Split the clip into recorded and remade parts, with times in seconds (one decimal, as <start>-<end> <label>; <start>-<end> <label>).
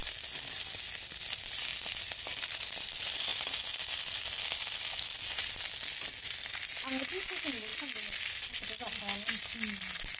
0.0-10.2 recorded